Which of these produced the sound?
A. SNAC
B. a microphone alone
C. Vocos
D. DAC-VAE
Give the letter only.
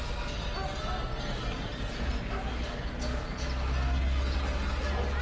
B